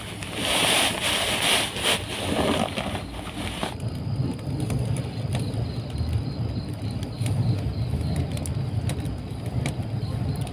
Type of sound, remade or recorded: recorded